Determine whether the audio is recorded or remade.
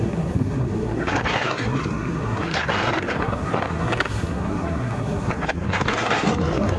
remade